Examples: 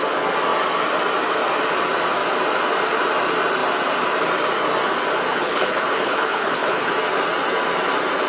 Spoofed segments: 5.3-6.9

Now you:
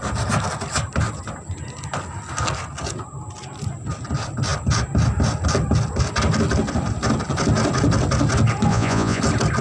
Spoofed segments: 8.7-9.2

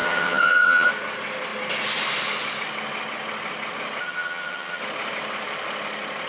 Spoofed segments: 0.0-0.9; 4.0-4.8

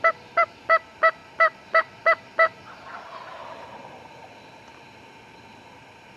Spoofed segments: none

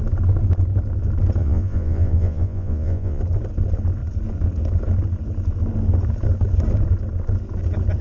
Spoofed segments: 1.4-3.2

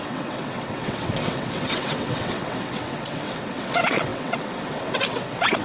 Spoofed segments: 0.0-5.6

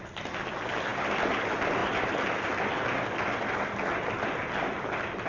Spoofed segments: none

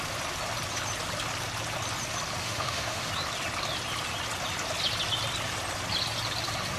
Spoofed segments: 2.4-3.1